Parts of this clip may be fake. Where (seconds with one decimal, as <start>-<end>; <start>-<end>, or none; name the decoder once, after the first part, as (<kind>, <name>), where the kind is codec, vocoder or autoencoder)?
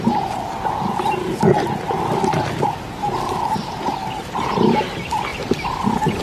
none